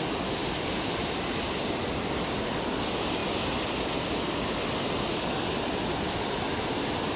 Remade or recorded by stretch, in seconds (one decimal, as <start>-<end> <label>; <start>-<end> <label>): 0.0-0.4 recorded; 0.4-2.3 remade; 2.3-7.2 recorded